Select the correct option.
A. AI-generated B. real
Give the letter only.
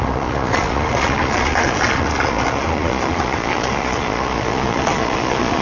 A